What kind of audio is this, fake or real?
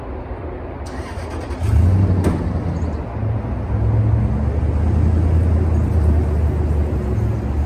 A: real